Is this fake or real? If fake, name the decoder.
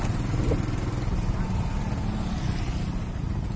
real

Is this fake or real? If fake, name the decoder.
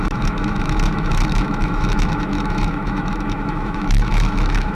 fake, autoencoder, DAC-VAE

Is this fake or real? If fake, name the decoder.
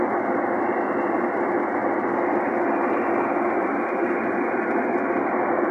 real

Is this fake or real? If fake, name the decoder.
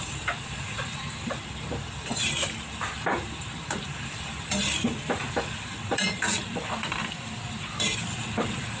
fake, vocoder, BigVGAN v2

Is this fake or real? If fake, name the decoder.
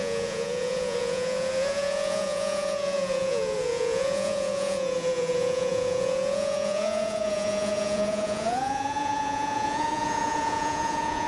fake, vocoder, Vocos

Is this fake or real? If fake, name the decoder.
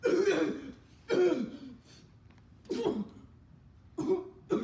real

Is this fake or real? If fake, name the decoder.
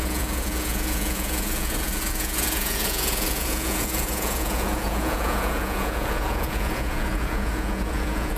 fake, vocoder, Vocos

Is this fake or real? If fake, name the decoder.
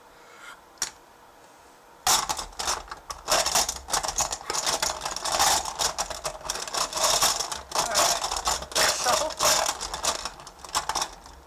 real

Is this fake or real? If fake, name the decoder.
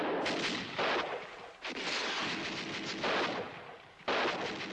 real